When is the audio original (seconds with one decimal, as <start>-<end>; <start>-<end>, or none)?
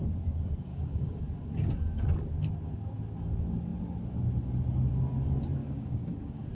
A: 0.0-0.7; 1.2-5.6